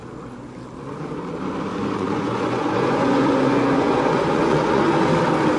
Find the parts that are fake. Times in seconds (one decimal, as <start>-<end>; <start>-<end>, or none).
1.7-5.1